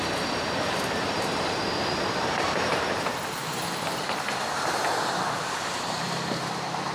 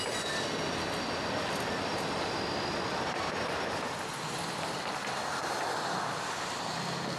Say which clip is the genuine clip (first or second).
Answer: second